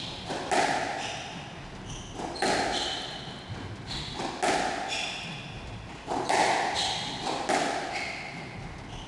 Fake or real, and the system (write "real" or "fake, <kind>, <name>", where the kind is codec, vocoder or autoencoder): real